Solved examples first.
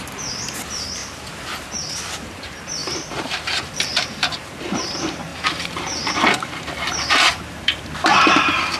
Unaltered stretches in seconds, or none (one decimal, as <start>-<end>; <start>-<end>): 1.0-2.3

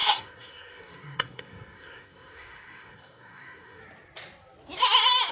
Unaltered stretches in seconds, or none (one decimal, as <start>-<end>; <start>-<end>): 3.8-5.3

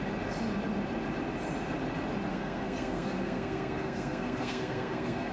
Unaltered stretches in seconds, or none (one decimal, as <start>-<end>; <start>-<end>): 0.0-2.3

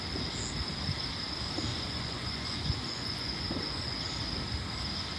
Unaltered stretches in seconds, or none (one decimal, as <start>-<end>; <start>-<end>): 0.0-1.7; 4.0-5.2